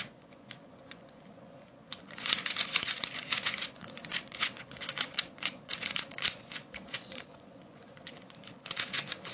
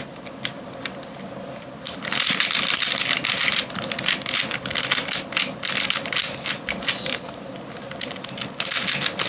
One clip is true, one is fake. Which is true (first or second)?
second